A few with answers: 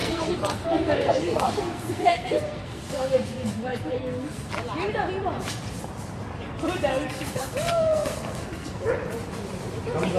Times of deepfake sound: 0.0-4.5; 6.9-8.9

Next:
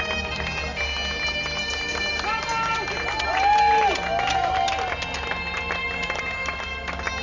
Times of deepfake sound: none